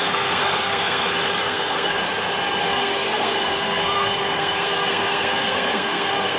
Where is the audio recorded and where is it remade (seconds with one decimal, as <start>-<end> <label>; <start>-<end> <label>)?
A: 0.0-2.0 remade; 2.0-2.6 recorded; 2.6-6.4 remade